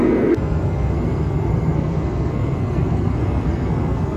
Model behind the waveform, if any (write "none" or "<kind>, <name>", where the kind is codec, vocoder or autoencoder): codec, SNAC